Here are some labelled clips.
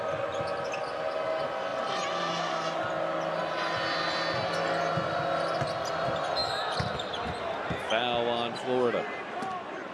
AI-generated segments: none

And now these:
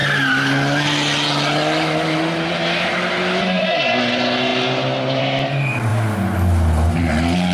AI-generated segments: none

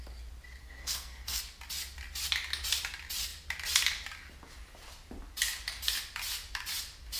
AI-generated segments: 0.6-1.4 (codec, SNAC)

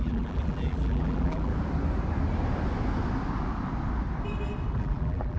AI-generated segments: 0.0-1.5 (vocoder, BigVGAN v2); 4.7-5.4